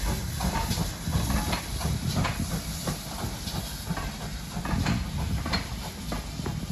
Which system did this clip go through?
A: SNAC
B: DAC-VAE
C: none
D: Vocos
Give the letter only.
C